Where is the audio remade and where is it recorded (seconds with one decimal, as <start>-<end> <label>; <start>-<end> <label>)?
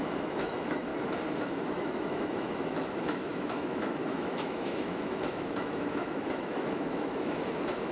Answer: 0.0-0.9 remade; 0.9-1.4 recorded; 1.4-7.9 remade